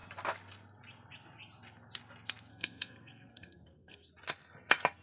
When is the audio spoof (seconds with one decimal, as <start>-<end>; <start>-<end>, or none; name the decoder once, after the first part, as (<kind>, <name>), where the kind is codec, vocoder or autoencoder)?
2.5-4.1 (codec, SNAC)